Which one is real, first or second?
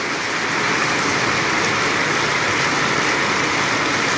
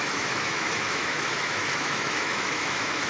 first